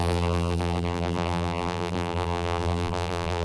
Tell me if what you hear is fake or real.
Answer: fake